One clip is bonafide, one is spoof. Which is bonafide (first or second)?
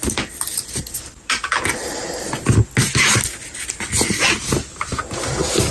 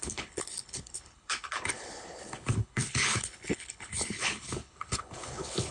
first